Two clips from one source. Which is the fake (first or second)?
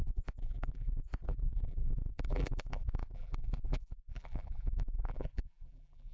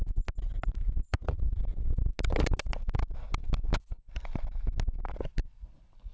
first